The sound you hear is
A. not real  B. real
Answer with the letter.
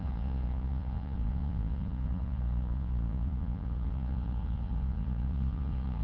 A